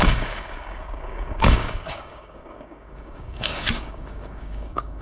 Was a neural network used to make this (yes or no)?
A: yes